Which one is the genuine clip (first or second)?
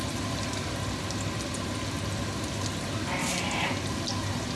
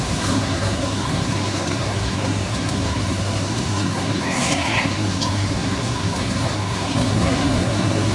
first